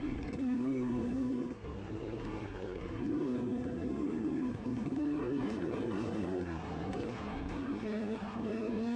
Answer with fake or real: fake